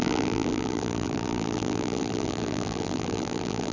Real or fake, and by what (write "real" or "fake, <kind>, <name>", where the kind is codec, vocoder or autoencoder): fake, vocoder, BigVGAN v2